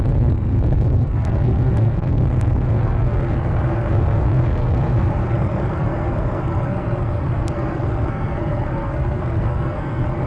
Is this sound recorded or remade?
remade